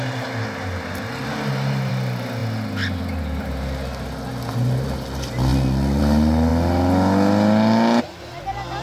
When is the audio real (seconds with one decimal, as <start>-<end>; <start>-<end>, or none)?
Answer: 0.0-8.8

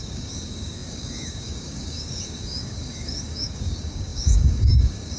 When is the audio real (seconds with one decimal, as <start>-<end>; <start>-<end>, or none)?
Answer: none

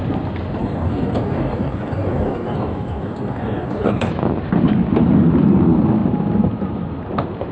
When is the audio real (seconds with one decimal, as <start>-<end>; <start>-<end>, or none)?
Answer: 0.0-0.6; 4.1-7.5

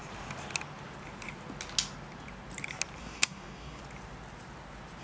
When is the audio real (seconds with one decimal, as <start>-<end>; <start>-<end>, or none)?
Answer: 0.0-3.0; 3.8-5.0

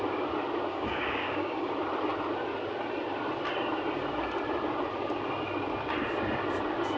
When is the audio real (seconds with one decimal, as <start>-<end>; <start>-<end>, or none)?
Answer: 0.0-0.7; 1.7-7.0